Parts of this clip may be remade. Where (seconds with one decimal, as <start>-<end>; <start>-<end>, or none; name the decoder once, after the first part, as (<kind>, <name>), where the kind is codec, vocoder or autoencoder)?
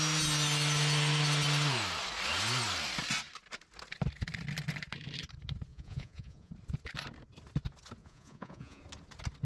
5.7-6.5 (vocoder, Vocos); 8.0-8.8